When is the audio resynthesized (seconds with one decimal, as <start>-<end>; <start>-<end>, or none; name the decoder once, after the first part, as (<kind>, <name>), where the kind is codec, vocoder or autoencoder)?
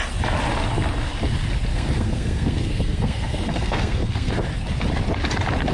1.7-4.3 (codec, SNAC)